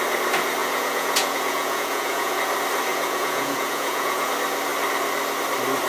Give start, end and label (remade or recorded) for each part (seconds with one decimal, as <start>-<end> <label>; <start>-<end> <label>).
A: 0.0-0.6 recorded; 0.6-2.3 remade; 2.3-2.9 recorded; 2.9-4.3 remade; 4.3-5.9 recorded